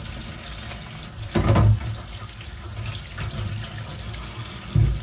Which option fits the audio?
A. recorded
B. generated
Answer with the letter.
A